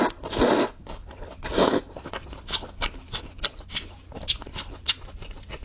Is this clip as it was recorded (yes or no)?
yes